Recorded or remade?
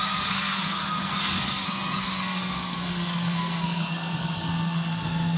remade